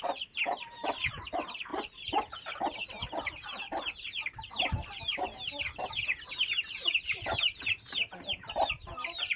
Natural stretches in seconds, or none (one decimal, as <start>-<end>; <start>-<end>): none